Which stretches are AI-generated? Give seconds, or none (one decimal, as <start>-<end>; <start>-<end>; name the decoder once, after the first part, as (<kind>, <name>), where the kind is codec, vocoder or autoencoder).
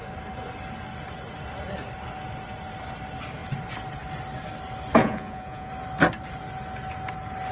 5.0-5.7 (vocoder, Vocos)